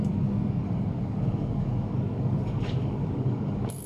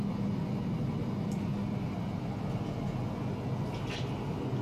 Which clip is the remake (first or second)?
first